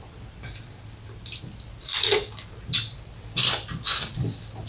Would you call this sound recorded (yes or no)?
yes